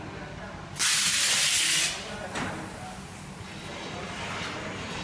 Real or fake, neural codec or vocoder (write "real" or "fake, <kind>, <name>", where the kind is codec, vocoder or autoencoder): real